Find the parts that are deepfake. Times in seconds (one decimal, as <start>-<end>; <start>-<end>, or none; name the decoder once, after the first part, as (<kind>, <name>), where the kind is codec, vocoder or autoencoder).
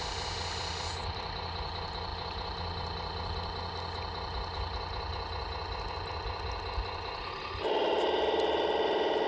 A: none